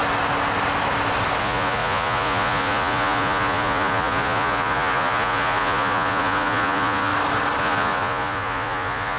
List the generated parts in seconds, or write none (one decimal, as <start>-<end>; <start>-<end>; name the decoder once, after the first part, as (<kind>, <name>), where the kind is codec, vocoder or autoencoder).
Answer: 1.4-7.1 (vocoder, Vocos); 7.6-9.2